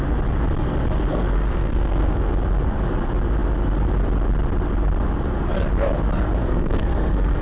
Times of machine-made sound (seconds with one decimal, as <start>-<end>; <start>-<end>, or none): 1.1-2.3; 6.4-7.4